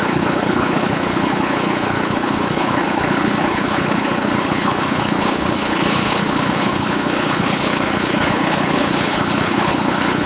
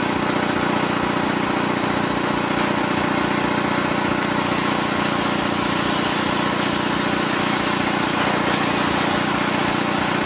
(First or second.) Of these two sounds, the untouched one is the second